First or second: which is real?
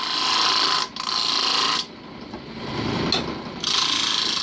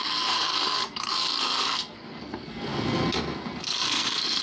first